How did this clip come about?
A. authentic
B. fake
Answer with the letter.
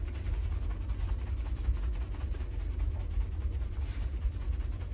A